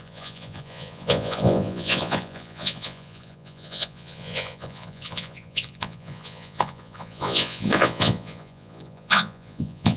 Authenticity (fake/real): fake